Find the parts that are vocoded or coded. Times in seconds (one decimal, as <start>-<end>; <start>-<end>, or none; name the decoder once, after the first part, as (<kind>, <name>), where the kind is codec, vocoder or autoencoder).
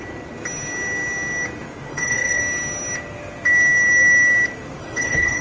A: 1.9-2.4 (codec, HILCodec); 4.8-5.4